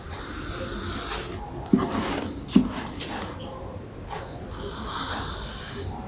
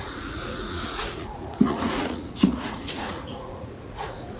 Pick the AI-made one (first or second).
second